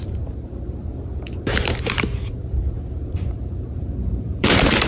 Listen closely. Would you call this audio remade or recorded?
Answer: remade